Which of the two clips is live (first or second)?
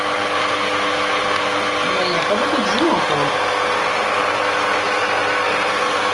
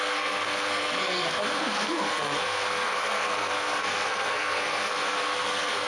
first